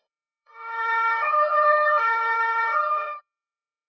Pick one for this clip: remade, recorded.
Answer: remade